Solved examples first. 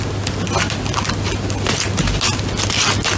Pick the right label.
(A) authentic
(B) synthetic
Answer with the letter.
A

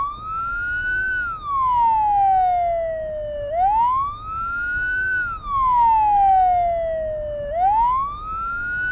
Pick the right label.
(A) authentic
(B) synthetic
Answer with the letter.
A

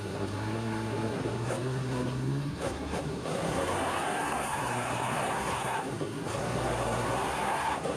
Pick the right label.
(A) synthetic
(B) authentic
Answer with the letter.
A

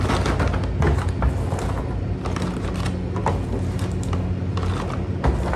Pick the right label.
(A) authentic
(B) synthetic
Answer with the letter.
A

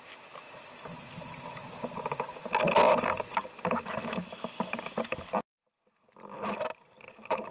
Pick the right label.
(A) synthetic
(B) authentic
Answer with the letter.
B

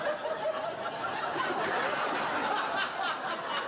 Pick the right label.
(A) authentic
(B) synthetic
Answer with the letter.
A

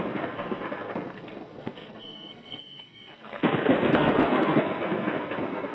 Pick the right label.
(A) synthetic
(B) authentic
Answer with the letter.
A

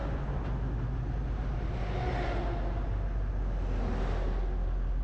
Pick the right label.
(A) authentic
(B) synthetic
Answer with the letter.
A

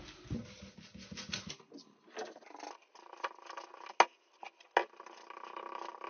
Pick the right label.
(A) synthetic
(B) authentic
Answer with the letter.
B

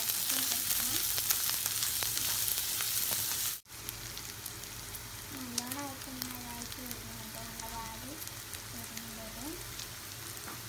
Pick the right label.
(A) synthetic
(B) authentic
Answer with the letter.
B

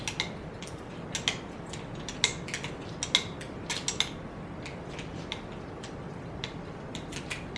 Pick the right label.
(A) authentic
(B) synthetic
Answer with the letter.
A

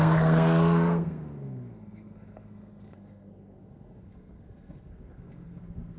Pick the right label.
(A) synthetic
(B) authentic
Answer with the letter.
A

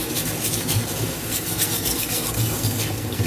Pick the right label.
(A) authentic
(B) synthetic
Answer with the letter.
B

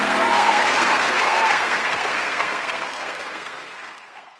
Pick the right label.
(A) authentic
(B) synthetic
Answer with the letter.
B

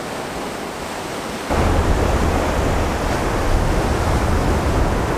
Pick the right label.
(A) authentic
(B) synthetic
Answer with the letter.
A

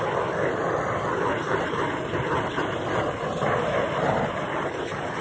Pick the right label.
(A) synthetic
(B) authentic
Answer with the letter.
B